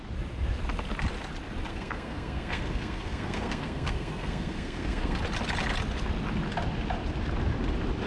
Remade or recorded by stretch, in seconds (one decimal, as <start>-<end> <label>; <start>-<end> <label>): 0.0-1.7 recorded; 1.7-5.2 remade; 5.2-8.1 recorded